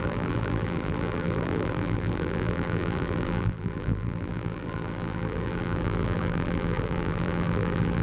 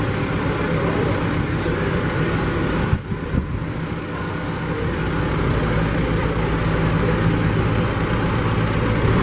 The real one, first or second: second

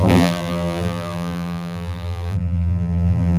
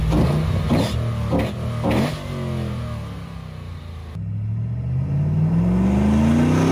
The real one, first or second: second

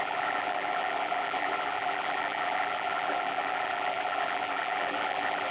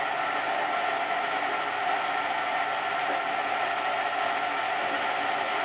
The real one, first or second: second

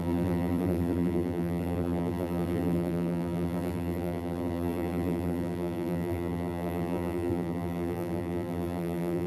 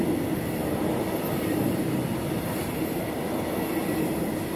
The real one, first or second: second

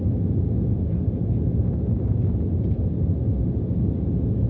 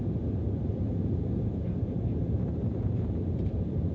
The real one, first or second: first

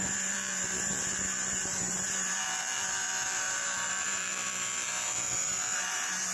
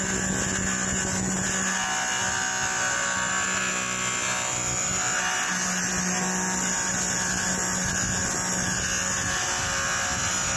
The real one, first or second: second